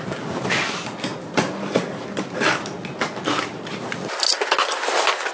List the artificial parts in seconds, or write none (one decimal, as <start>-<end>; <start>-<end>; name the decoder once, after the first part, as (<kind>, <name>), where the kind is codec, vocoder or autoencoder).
none